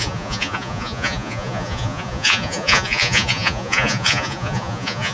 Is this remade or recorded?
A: remade